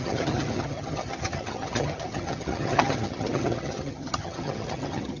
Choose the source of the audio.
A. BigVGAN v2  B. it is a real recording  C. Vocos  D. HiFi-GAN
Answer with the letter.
D